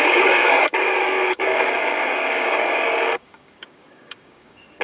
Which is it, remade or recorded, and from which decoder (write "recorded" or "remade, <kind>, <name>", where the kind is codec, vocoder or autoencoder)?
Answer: remade, codec, DAC